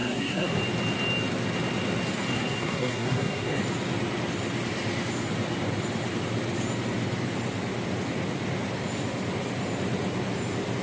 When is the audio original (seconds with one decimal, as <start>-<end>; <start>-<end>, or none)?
0.6-2.3; 3.6-10.8

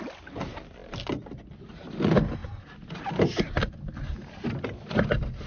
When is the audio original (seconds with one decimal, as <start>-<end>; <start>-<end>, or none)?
0.0-5.5